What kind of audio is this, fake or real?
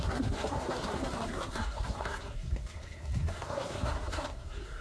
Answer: fake